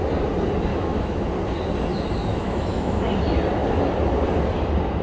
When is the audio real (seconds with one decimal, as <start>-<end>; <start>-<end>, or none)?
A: 0.0-0.7; 1.3-2.3; 3.0-5.0